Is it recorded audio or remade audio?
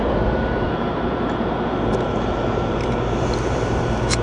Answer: remade